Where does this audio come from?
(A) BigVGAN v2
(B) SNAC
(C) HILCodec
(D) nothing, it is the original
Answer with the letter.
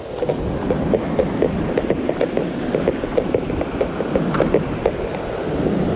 D